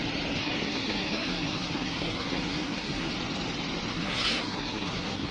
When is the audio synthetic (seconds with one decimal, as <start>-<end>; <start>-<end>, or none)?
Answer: 0.4-3.1; 3.9-5.3